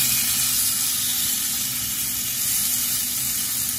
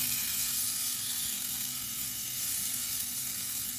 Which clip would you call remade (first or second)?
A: second